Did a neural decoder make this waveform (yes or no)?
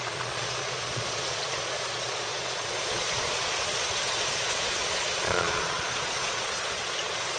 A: yes